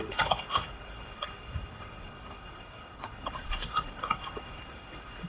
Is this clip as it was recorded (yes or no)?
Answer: no